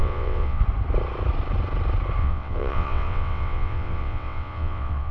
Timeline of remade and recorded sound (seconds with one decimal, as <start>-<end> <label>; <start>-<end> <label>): 0.0-0.6 remade; 0.6-2.2 recorded; 2.2-5.1 remade

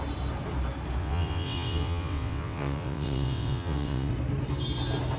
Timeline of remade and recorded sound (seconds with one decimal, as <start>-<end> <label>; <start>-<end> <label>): 0.0-1.0 recorded; 1.0-4.1 remade; 4.1-5.2 recorded

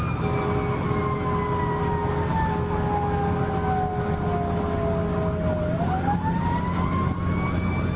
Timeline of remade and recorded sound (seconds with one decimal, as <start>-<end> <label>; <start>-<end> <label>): 0.0-8.0 recorded